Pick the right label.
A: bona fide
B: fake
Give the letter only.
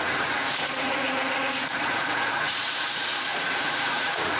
B